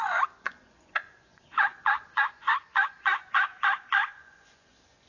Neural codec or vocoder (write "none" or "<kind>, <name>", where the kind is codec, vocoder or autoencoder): vocoder, Vocos